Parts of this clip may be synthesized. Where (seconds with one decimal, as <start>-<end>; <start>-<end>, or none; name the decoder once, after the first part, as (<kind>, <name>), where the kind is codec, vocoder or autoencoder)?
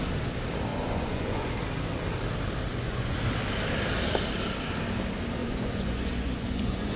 0.7-1.5 (vocoder, Vocos); 2.7-3.2; 5.4-7.0